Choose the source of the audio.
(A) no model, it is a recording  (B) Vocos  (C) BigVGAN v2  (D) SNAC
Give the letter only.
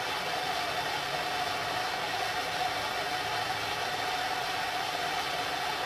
A